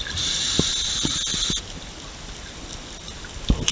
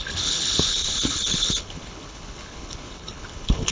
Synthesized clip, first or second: second